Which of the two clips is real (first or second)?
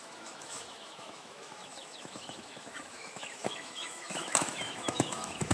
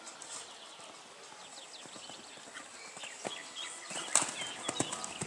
second